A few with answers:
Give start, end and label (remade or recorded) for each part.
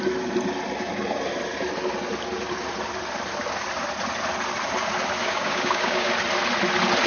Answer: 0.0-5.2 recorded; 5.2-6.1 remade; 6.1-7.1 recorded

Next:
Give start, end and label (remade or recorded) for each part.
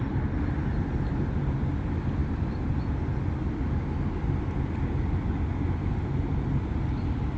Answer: 0.0-7.4 recorded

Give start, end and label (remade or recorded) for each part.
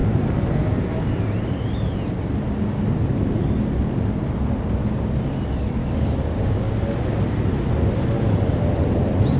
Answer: 0.0-5.8 recorded; 5.8-6.7 remade; 6.7-9.4 recorded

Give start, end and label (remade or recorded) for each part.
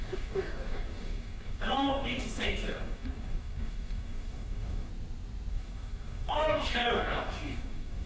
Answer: 0.0-4.9 remade; 4.9-5.5 recorded; 5.5-8.1 remade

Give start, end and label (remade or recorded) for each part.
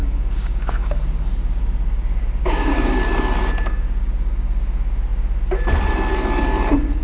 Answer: 0.0-0.9 remade; 0.9-2.4 recorded; 2.4-3.0 remade; 3.0-7.0 recorded